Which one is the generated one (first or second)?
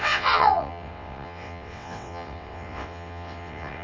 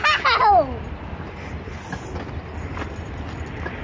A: first